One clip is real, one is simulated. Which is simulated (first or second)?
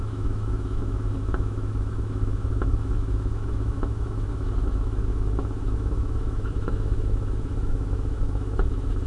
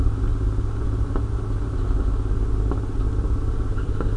first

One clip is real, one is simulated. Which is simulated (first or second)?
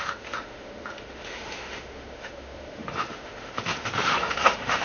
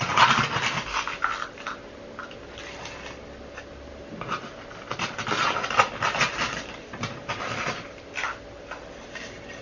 first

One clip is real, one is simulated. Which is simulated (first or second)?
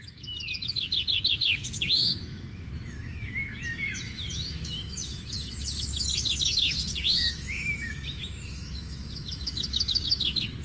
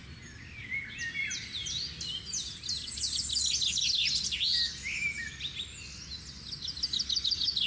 first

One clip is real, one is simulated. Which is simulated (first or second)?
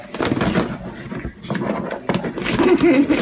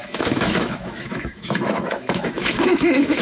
second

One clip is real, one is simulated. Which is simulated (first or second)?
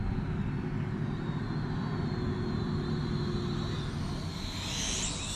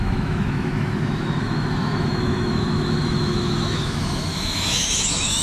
second